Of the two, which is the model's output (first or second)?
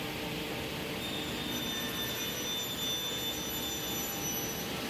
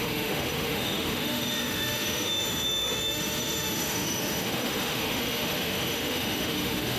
second